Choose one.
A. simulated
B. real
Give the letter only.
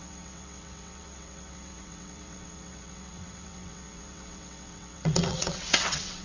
A